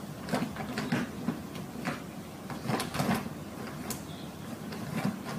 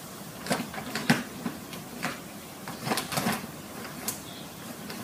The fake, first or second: second